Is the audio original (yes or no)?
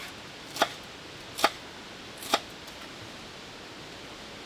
yes